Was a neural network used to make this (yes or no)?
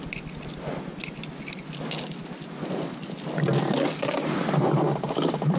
no